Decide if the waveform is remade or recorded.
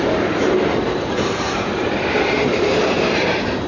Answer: remade